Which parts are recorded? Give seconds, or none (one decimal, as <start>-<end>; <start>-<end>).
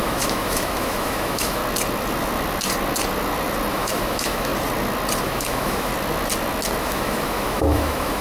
1.6-3.7; 4.5-5.2; 5.9-6.8